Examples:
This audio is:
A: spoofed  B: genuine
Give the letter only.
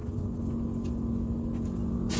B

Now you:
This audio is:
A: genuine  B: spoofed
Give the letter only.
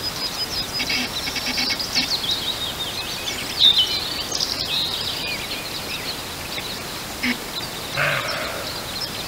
A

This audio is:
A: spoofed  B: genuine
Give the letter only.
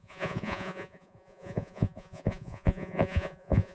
A